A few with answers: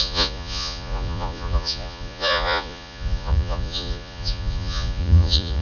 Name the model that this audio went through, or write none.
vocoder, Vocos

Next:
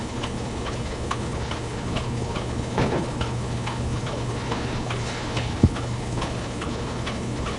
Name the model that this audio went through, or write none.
codec, HILCodec